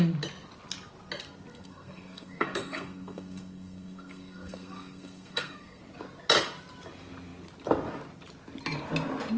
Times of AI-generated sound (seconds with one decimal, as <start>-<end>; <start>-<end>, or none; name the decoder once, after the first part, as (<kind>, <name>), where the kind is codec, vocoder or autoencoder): 1.5-5.8 (codec, SNAC)